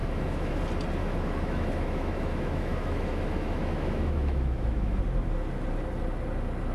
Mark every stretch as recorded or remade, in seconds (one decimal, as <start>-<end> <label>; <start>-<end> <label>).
0.0-0.6 remade; 0.6-1.0 recorded; 1.0-5.0 remade; 5.0-6.7 recorded